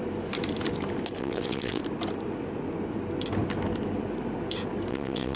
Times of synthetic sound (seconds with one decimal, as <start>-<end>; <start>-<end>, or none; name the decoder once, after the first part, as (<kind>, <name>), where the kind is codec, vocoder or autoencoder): 1.2-1.8 (vocoder, WaveNeXt); 4.9-5.4